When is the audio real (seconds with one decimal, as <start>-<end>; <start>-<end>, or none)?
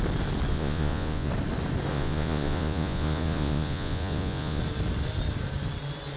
0.0-0.5; 1.3-1.9; 4.6-6.2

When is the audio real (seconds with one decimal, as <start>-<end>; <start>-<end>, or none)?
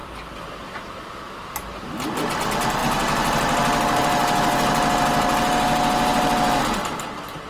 0.5-7.5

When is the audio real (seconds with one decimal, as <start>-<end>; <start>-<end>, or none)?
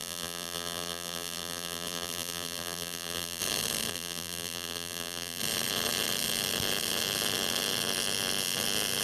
3.4-3.9; 5.4-9.0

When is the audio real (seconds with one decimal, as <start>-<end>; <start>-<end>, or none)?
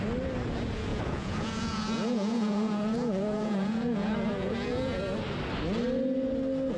0.0-0.9; 5.0-6.8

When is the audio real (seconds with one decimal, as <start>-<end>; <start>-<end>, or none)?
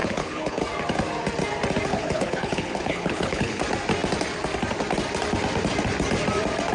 0.6-1.9; 3.6-6.7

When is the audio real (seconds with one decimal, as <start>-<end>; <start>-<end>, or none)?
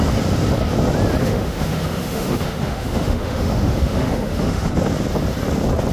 0.0-1.2; 4.7-5.9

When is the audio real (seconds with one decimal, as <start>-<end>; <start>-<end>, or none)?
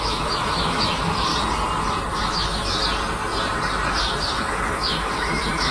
1.3-2.1; 2.8-4.0